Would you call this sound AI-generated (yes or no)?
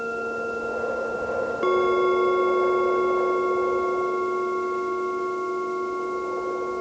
no